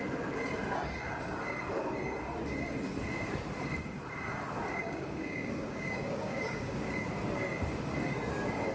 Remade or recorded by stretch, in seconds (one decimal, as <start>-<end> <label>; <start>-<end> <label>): 0.0-4.8 recorded; 4.8-7.1 remade; 7.1-8.7 recorded